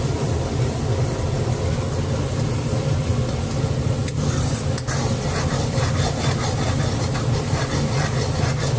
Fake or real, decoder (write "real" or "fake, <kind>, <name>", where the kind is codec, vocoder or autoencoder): real